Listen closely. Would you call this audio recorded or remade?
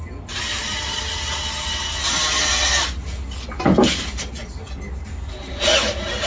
recorded